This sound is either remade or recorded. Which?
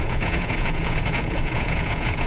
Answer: remade